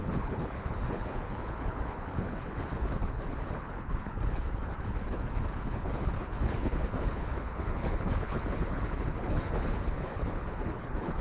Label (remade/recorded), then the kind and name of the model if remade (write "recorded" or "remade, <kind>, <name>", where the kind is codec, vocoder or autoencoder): remade, codec, HILCodec